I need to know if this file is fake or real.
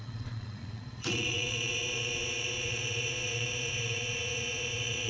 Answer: fake